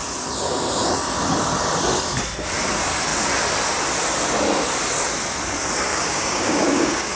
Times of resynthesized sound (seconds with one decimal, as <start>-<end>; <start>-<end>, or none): 5.9-7.2

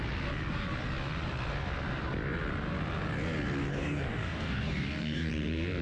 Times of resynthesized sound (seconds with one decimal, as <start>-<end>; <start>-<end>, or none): 3.7-5.3

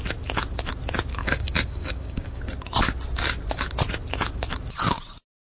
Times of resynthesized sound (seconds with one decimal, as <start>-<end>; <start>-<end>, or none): 1.1-2.4

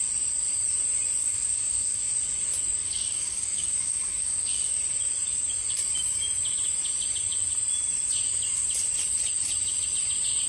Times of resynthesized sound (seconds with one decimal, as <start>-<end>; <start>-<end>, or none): 1.2-2.1; 2.8-4.8

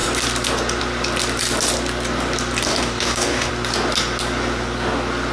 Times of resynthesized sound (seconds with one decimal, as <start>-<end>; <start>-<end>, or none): 2.7-3.5

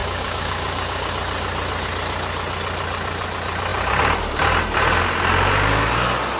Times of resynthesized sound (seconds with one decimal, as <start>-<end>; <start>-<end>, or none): 0.0-1.1

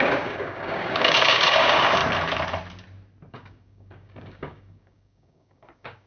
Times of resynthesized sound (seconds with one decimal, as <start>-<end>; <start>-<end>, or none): 0.0-2.0; 3.3-6.1